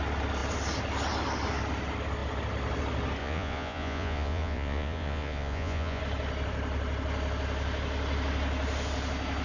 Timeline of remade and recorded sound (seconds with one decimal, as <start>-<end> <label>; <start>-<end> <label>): 0.0-3.2 recorded; 3.2-6.0 remade; 6.0-9.4 recorded